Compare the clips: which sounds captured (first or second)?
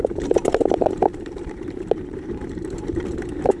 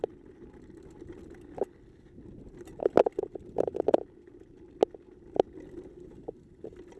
second